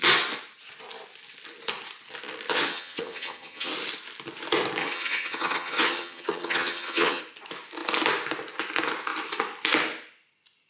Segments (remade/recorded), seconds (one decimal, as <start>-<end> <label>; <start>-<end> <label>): 0.0-2.5 recorded; 2.5-3.7 remade; 3.7-4.8 recorded; 4.8-7.2 remade; 7.2-10.7 recorded